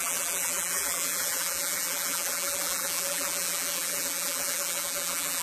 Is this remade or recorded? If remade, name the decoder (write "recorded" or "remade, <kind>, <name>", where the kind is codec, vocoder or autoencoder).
remade, vocoder, BigVGAN v2